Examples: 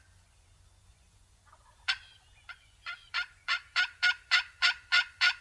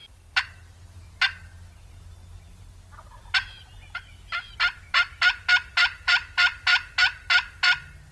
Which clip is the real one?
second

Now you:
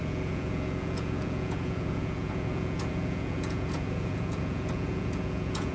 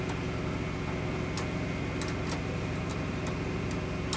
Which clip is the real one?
second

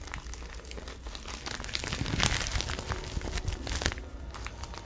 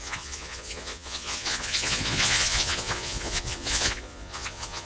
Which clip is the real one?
first